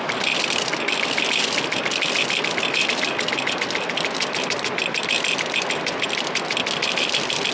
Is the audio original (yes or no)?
yes